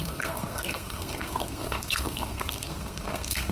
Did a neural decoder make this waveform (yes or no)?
yes